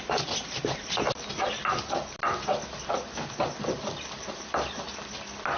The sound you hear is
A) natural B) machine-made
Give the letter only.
A